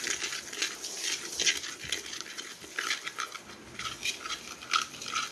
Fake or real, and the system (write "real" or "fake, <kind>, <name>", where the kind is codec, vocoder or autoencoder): real